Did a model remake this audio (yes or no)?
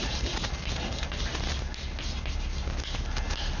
no